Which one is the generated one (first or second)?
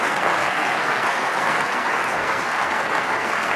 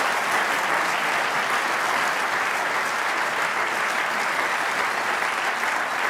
first